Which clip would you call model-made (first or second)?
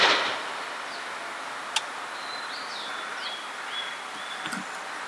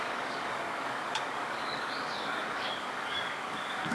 second